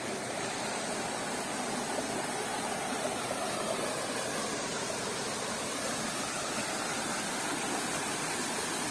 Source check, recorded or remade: recorded